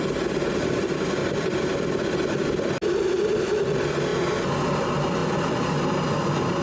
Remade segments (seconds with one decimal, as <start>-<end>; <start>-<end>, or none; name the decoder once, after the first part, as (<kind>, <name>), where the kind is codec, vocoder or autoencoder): 1.2-2.0 (vocoder, BigVGAN v2); 5.2-6.0